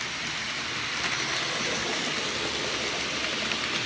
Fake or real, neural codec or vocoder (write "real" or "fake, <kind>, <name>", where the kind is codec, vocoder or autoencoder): real